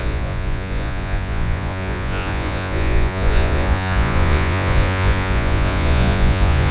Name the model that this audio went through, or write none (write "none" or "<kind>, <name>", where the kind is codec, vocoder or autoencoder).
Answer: vocoder, Vocos